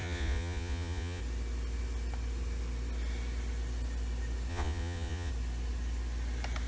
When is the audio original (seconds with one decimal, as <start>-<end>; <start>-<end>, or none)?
1.2-4.5; 5.3-6.7